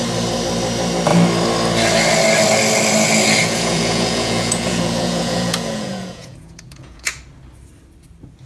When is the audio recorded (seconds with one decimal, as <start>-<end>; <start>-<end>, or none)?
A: 0.0-3.4; 7.2-8.5